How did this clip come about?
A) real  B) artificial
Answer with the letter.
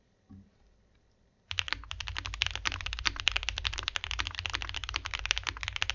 B